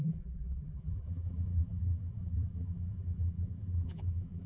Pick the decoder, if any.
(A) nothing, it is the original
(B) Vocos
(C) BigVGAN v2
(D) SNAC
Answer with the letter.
C